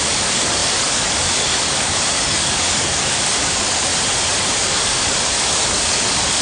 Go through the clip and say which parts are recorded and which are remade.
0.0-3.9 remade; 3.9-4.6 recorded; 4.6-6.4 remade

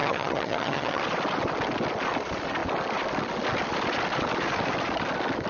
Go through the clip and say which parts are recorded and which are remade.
0.0-1.0 remade; 1.0-5.5 recorded

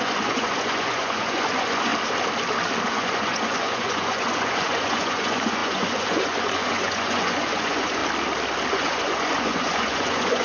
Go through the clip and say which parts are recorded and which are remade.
0.0-1.9 remade; 1.9-2.9 recorded; 2.9-8.0 remade; 8.0-8.7 recorded; 8.7-10.4 remade